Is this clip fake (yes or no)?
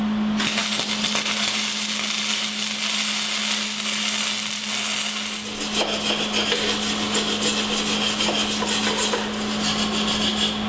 no